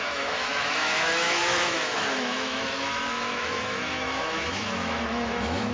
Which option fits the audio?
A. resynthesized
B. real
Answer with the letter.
A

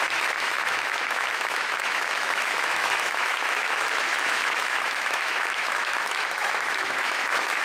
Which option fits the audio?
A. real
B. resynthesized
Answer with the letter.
B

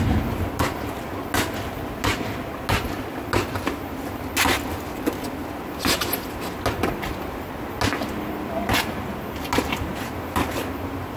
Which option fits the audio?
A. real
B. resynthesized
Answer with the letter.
A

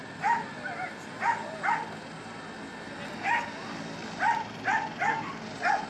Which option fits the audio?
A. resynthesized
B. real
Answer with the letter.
B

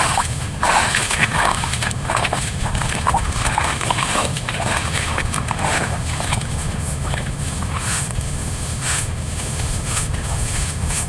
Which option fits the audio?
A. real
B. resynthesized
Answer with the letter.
B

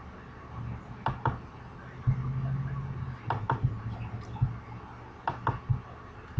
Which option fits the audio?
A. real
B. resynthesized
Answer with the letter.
A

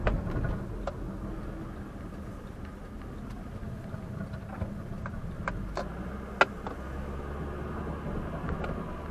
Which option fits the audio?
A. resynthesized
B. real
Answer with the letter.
B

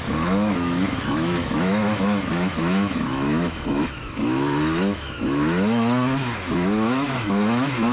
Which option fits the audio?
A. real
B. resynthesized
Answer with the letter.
B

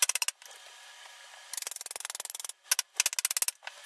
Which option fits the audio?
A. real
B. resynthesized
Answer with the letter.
A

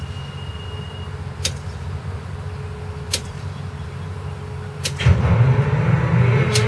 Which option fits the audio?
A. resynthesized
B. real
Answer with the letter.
B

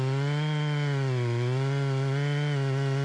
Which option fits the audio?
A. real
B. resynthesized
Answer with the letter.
A